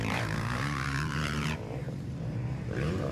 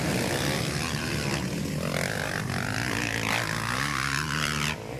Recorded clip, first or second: second